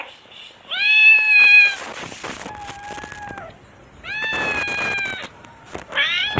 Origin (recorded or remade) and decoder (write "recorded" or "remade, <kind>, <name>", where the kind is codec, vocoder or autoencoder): recorded